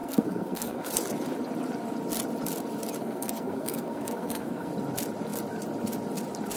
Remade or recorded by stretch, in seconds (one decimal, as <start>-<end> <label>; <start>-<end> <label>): 0.0-0.9 remade; 0.9-3.0 recorded; 3.0-4.7 remade; 4.7-6.6 recorded